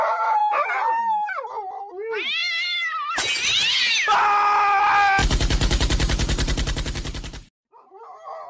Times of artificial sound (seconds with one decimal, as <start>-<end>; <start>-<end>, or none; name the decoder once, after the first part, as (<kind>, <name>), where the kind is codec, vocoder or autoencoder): 0.4-1.0 (vocoder, BigVGAN v2); 5.2-8.0